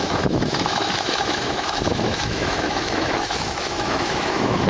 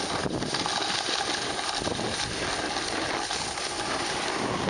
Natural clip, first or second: second